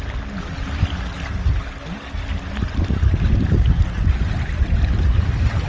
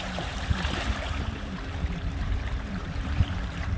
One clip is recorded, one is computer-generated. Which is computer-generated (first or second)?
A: second